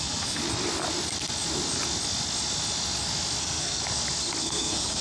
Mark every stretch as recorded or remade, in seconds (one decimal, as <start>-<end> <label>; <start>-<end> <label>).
0.0-0.4 remade; 0.4-3.4 recorded; 3.4-3.8 remade; 3.8-4.4 recorded; 4.4-5.0 remade